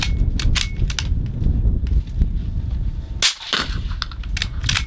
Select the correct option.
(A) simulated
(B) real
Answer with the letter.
B